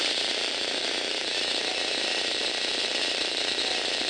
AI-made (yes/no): yes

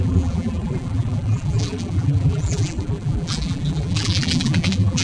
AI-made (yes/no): yes